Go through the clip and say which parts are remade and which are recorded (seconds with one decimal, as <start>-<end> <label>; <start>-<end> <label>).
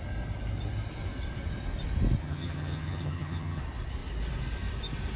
0.0-2.2 recorded; 2.2-3.6 remade; 3.6-5.2 recorded